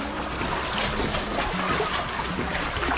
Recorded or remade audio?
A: recorded